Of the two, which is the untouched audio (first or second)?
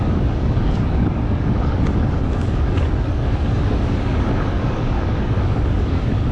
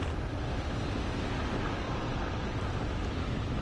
second